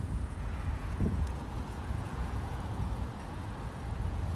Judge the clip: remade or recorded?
remade